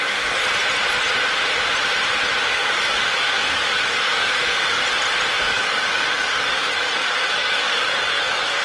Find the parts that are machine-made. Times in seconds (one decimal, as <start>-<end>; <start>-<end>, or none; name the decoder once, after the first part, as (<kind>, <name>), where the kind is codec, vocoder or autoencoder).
0.0-0.4 (codec, DAC); 2.4-4.8; 5.4-8.6